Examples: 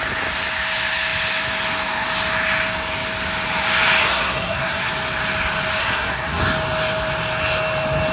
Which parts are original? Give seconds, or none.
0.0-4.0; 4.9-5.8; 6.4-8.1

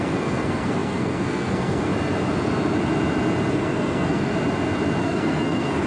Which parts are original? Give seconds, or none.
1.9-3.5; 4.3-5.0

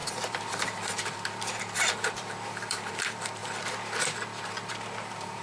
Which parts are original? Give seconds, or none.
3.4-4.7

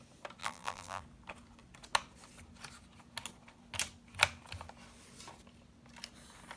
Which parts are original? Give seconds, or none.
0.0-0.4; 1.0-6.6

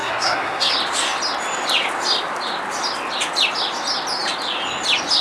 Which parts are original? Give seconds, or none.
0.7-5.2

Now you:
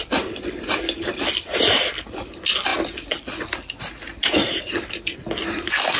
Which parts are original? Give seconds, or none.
0.0-6.0